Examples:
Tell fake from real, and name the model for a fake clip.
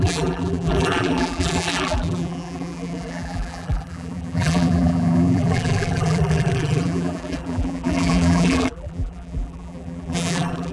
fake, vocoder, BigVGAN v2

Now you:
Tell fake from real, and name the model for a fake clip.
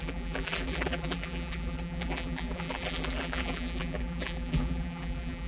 fake, vocoder, BigVGAN v2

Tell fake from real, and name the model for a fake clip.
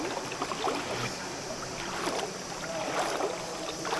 real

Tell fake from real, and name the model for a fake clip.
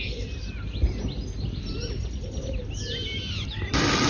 real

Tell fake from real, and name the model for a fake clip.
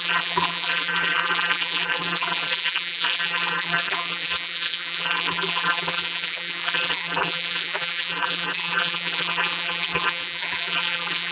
fake, vocoder, BigVGAN v2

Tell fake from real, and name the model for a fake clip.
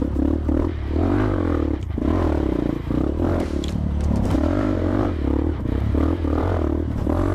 fake, vocoder, BigVGAN v2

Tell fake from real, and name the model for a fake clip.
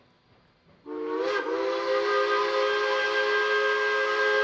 real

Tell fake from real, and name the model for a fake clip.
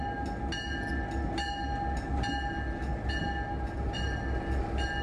real